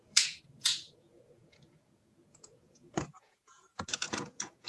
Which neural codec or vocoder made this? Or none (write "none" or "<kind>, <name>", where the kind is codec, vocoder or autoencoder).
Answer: vocoder, Vocos